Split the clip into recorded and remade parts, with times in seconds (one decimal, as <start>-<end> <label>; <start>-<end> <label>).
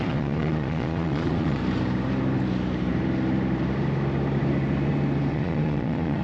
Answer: 0.0-1.6 remade; 1.6-5.3 recorded; 5.3-6.2 remade